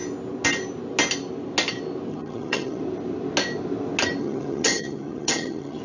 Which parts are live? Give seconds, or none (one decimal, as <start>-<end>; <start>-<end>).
0.0-2.1; 2.8-4.2